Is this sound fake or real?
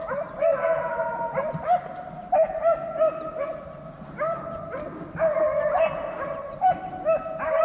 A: real